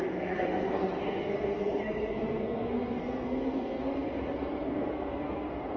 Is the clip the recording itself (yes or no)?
no